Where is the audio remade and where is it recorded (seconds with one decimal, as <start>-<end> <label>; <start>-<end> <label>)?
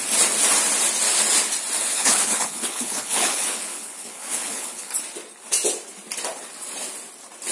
0.0-1.9 recorded; 1.9-4.9 remade; 4.9-7.5 recorded